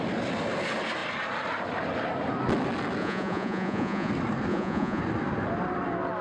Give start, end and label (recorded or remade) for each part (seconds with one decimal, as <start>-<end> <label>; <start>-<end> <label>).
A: 0.0-3.0 recorded; 3.0-4.1 remade; 4.1-4.5 recorded; 4.5-5.0 remade; 5.0-6.2 recorded